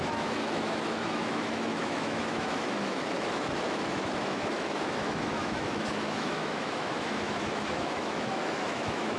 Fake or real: fake